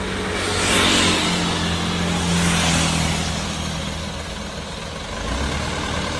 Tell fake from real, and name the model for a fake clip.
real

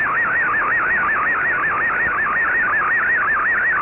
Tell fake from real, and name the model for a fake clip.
real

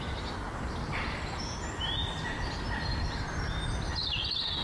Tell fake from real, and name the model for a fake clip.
real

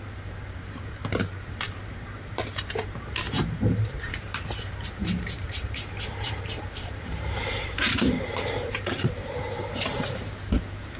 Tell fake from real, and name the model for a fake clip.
fake, vocoder, BigVGAN v2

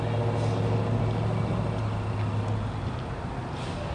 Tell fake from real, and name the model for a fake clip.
real